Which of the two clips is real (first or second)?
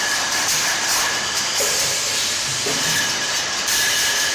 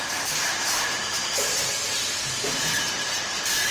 second